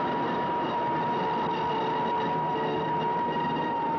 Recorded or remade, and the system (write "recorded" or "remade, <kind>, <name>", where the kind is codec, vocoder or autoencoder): recorded